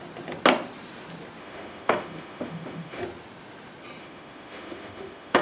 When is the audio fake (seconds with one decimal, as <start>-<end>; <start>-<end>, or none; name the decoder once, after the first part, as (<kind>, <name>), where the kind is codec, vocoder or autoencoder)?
1.4-3.0 (autoencoder, DAC-VAE); 4.0-5.4